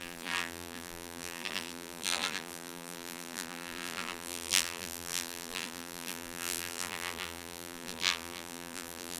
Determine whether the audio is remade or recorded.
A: remade